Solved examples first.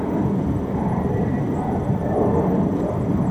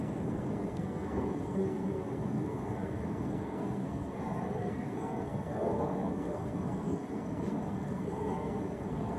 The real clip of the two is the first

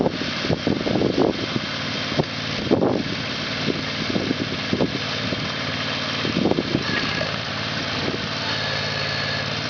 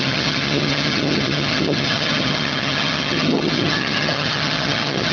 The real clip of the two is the first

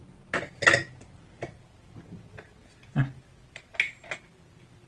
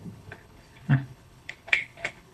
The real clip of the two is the first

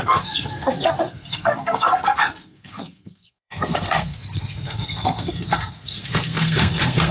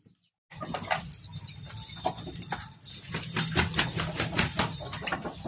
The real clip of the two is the second